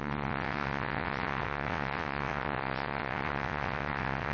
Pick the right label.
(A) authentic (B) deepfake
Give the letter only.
B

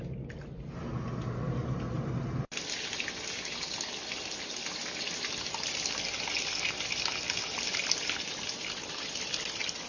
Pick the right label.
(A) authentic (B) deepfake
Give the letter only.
A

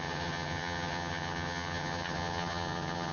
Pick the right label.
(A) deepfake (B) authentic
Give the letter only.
A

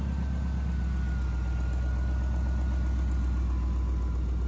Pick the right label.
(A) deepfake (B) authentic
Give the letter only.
B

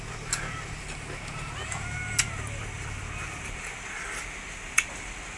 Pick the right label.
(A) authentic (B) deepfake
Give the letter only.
A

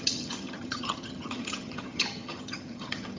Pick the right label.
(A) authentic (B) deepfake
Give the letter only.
B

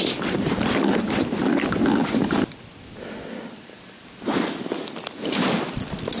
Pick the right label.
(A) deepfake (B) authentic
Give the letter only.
B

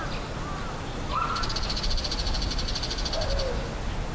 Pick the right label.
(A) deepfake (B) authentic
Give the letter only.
B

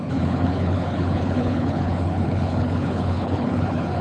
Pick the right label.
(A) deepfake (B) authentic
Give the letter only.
A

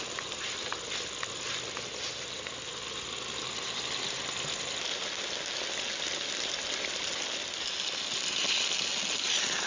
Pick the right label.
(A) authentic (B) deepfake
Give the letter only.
A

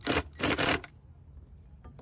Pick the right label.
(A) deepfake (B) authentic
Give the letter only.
B